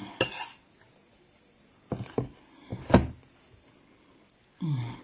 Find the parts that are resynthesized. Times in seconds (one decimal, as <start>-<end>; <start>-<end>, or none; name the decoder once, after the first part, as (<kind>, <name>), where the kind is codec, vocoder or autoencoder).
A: none